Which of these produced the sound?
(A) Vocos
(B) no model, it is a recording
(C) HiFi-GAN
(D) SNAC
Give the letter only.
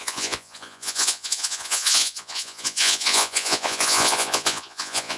A